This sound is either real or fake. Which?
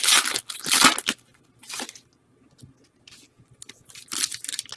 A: real